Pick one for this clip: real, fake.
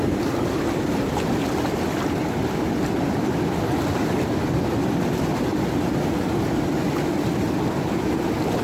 real